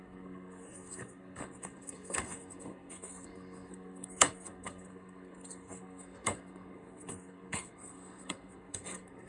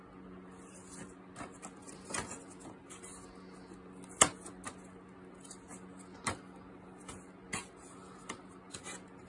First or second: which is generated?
first